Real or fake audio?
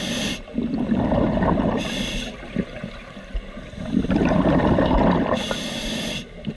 real